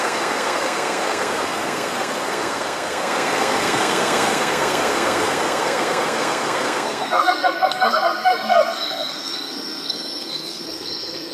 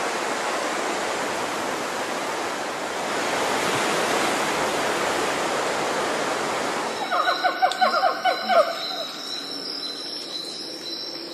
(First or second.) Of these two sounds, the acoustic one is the second